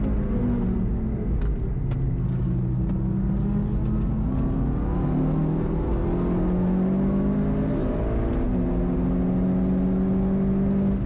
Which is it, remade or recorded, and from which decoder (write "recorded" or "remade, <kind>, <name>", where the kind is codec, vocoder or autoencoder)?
recorded